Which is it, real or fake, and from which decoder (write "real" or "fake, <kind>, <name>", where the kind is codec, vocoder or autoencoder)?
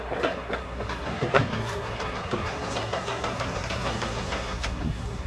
fake, codec, SNAC